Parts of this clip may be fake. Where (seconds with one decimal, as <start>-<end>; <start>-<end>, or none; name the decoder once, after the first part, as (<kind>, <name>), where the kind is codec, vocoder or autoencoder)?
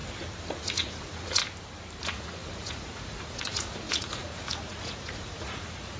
0.6-1.4 (vocoder, Vocos); 2.0-6.0